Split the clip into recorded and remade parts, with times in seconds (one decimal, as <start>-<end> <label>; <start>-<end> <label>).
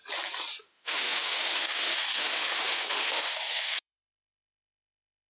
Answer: 0.0-0.6 recorded; 0.6-5.3 remade